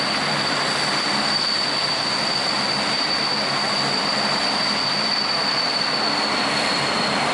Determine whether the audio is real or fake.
real